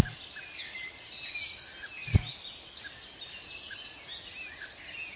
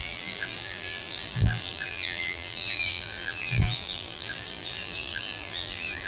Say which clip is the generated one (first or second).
second